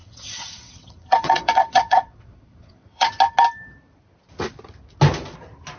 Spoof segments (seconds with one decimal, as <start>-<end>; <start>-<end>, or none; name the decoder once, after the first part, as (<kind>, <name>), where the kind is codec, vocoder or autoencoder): 0.0-3.1 (vocoder, WaveNeXt)